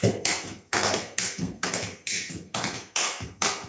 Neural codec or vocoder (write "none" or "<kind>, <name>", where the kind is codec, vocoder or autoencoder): codec, SNAC